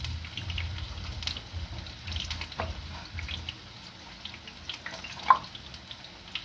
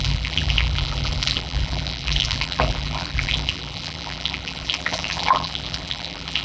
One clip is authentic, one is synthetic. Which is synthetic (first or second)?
second